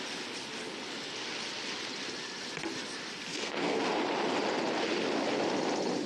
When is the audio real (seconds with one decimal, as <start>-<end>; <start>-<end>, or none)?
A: 0.0-3.3; 3.9-6.1